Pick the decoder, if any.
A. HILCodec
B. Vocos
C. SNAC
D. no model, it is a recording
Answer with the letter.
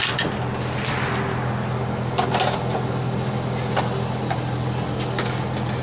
D